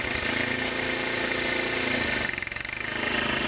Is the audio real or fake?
real